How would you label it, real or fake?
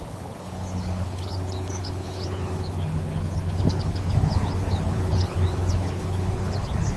fake